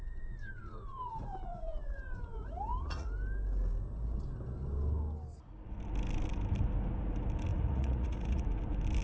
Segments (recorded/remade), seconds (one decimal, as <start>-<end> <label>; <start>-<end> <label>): 0.0-3.1 remade; 3.1-7.5 recorded; 7.5-8.4 remade; 8.4-9.0 recorded